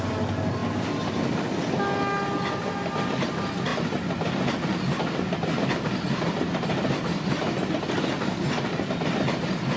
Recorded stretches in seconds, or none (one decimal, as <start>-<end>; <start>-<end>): 0.0-9.8